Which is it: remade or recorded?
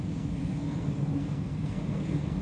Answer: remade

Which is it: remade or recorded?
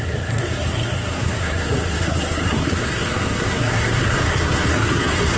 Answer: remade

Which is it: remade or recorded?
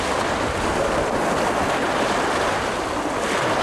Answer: recorded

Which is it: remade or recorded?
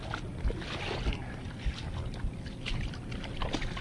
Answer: recorded